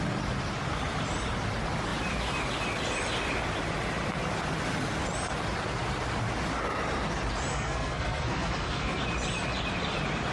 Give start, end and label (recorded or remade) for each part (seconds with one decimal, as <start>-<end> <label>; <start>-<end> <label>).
0.0-7.5 recorded; 7.5-9.0 remade; 9.0-10.3 recorded